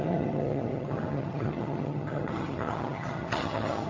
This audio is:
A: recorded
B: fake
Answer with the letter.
B